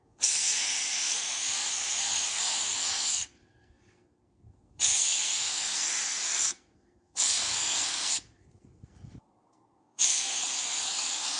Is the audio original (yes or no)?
no